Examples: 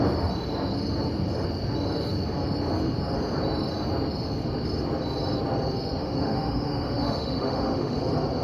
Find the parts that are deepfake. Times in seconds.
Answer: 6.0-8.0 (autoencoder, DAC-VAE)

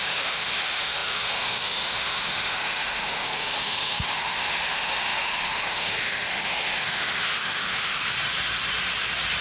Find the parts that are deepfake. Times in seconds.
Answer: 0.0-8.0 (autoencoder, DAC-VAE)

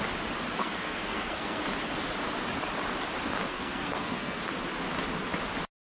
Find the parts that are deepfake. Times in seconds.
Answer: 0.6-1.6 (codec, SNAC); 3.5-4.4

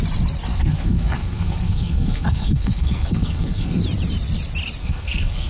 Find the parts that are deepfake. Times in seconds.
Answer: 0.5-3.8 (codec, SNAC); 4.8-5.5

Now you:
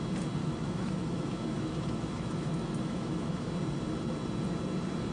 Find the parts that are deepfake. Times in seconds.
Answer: 0.4-3.5 (autoencoder, DAC-VAE)